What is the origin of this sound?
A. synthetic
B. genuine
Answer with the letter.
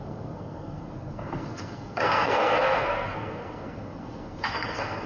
A